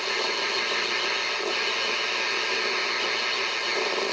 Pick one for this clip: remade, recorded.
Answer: recorded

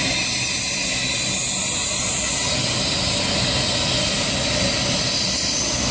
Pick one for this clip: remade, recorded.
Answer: recorded